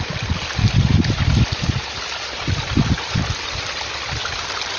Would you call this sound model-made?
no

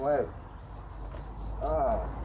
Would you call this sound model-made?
no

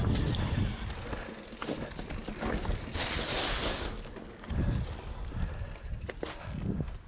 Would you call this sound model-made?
no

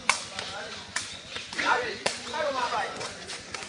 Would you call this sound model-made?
yes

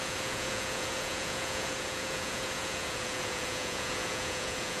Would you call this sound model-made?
yes